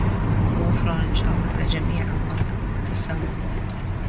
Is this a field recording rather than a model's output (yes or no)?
yes